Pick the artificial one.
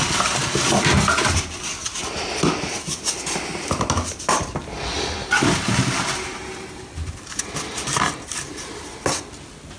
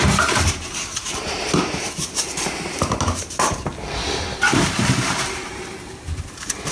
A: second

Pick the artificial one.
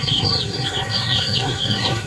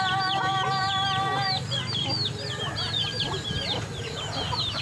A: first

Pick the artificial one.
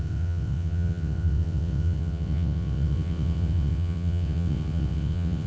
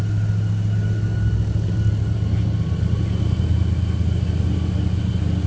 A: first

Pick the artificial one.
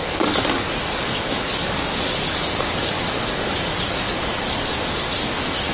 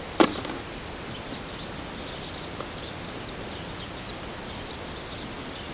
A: first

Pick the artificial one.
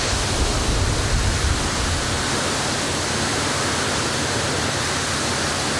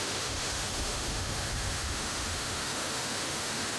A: second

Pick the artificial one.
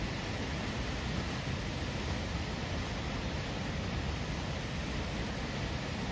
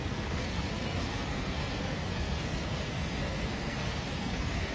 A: second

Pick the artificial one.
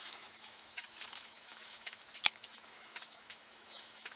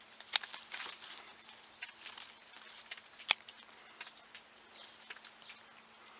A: first